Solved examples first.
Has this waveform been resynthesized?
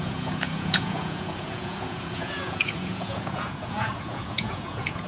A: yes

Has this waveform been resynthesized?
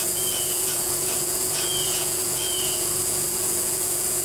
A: yes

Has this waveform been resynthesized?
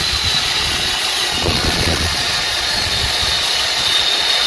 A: yes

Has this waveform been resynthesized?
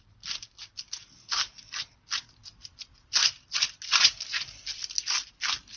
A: no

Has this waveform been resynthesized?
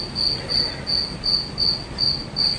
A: no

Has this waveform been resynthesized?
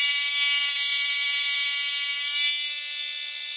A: no